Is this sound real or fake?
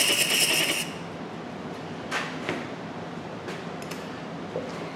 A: real